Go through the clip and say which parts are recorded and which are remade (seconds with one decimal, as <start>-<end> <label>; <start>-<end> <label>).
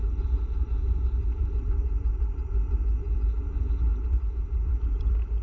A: 0.0-5.4 recorded